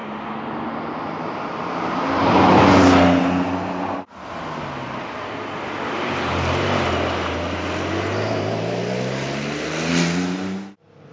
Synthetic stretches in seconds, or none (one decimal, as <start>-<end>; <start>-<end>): none